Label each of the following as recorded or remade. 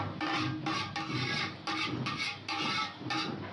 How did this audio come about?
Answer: recorded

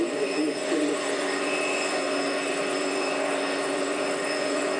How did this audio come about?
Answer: remade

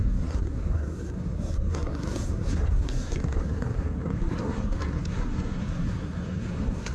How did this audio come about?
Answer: remade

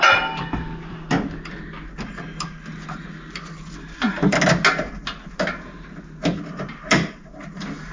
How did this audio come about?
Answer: recorded